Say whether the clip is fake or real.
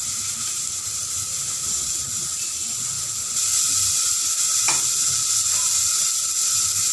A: real